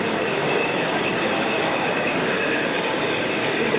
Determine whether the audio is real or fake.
fake